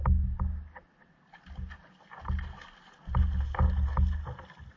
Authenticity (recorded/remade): recorded